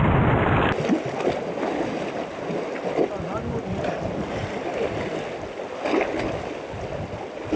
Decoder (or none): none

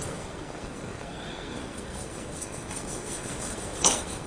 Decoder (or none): codec, SNAC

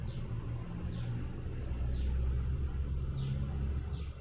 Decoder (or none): none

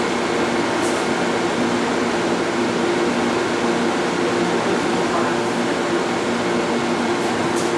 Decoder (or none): none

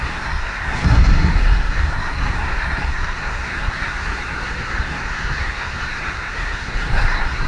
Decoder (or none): codec, SNAC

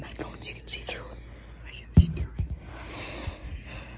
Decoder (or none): none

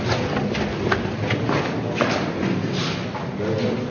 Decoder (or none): none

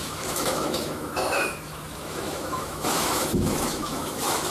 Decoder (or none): autoencoder, DAC-VAE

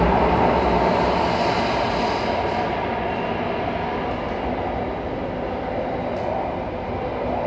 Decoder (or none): none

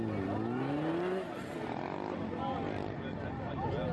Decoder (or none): none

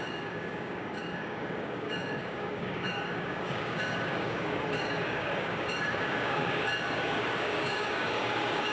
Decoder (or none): codec, DAC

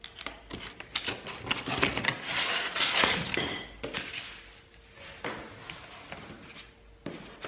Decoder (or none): none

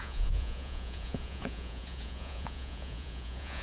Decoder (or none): vocoder, Vocos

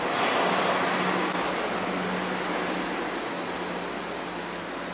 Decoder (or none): none